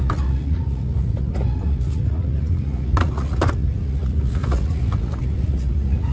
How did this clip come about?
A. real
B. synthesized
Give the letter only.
B